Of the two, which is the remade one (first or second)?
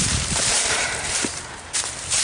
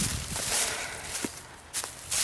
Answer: first